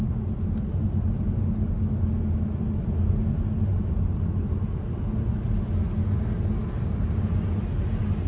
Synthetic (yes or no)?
no